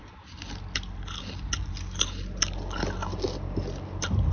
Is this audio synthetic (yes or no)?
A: no